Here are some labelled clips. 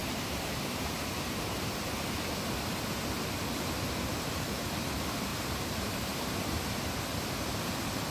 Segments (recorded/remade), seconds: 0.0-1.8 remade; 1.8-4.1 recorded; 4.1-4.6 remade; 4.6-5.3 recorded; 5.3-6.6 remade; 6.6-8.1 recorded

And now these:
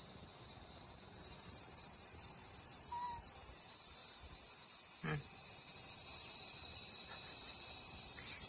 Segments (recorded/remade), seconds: 0.0-4.0 remade; 4.0-5.9 recorded; 5.9-8.5 remade